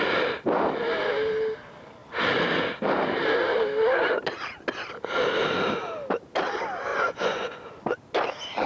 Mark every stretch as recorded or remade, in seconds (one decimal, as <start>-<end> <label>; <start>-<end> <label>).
0.0-6.9 recorded; 6.9-7.7 remade; 7.7-8.7 recorded